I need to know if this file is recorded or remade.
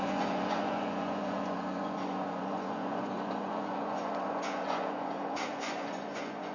remade